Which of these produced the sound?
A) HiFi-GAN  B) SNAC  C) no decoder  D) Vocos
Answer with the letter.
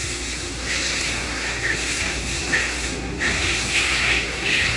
B